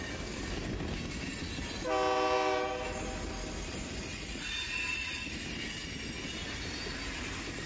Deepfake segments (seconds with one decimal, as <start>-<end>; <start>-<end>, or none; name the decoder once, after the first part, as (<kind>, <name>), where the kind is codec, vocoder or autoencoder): 4.1-5.4 (vocoder, Vocos)